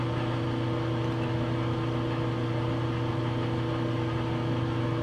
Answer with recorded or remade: recorded